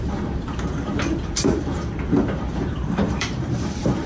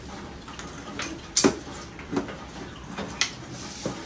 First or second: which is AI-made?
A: first